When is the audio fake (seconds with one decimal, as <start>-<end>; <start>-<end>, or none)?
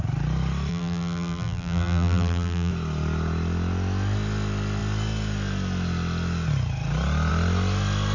0.7-2.7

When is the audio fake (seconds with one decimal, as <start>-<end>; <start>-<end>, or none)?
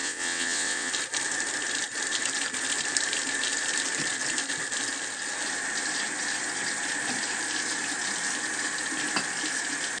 0.0-0.9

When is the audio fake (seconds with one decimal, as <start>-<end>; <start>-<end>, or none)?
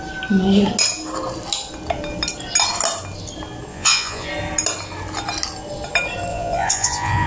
3.7-4.3; 6.3-7.3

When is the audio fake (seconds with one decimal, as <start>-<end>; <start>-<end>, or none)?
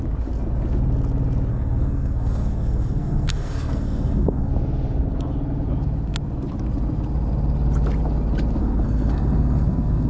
1.5-4.5; 8.6-10.1